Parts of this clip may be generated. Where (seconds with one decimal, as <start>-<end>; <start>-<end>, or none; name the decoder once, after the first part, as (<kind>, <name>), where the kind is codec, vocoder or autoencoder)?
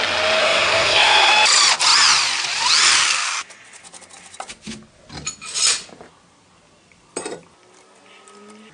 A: 0.4-1.3 (codec, SNAC)